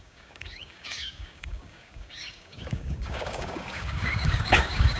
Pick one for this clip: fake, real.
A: fake